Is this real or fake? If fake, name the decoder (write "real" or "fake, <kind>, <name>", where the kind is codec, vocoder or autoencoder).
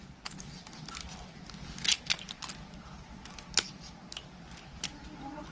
real